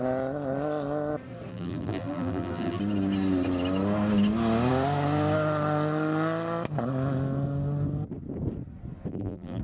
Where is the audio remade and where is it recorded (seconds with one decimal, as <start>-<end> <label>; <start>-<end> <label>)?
0.0-1.5 recorded; 1.5-2.8 remade; 2.8-9.1 recorded; 9.1-9.6 remade